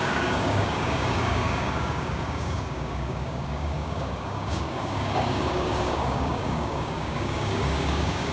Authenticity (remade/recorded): remade